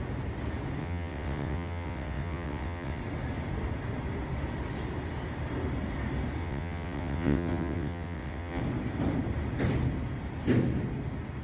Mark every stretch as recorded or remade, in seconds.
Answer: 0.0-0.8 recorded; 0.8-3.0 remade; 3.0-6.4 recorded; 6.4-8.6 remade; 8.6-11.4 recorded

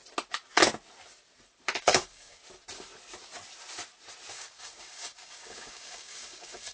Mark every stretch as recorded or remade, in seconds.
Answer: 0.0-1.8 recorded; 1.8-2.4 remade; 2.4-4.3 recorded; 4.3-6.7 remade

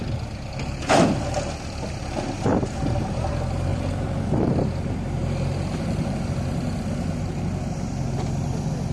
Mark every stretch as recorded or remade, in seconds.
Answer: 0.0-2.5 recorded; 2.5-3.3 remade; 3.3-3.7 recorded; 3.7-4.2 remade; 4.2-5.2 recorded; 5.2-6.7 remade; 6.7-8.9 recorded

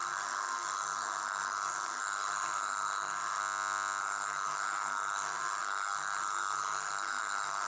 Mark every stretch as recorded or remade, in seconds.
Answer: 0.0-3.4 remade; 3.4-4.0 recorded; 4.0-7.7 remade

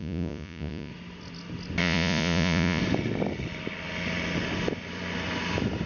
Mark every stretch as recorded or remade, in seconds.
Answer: 0.0-0.9 remade; 0.9-1.8 recorded; 1.8-2.8 remade; 2.8-5.9 recorded

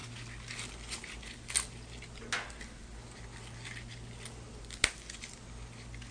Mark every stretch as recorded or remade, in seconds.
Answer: 0.0-6.1 recorded

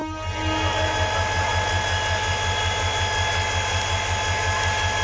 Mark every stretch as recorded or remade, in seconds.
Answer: 0.0-5.0 recorded